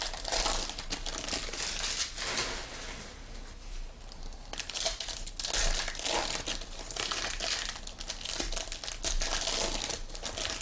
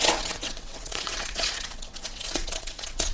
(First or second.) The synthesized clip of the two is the second